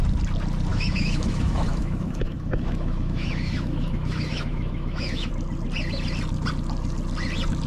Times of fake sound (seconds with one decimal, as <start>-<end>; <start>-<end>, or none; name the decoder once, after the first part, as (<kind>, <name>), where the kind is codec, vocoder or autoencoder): 0.7-5.3 (autoencoder, DAC-VAE)